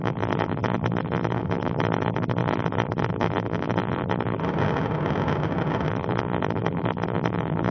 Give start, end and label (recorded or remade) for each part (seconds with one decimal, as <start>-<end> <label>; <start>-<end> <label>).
0.0-4.4 remade; 4.4-5.9 recorded; 5.9-7.7 remade